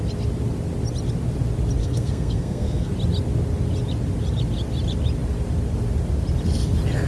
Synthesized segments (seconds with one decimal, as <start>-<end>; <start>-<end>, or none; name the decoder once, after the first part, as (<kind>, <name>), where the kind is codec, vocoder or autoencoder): 1.8-2.9 (codec, SNAC)